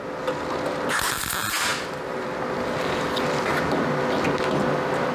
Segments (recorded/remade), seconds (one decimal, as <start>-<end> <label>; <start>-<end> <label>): 0.0-5.1 recorded